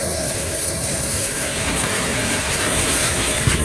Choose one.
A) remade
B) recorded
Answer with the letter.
A